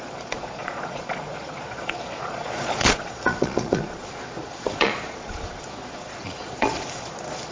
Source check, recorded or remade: remade